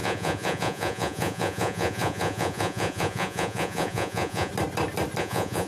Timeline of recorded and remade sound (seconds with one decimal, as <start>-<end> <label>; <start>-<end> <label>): 0.0-4.5 remade; 4.5-5.2 recorded; 5.2-5.7 remade